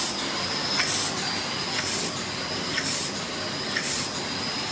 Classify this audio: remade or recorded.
recorded